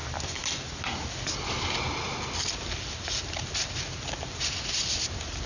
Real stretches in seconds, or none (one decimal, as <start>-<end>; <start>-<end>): 0.0-5.5